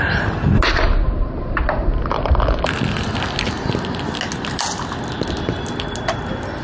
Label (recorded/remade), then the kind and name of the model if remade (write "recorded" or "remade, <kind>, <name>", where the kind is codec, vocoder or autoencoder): recorded